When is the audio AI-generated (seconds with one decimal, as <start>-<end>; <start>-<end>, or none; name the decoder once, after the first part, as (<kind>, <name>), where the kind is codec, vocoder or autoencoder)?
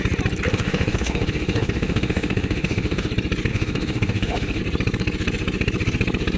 0.5-3.1 (autoencoder, DAC-VAE); 3.5-4.6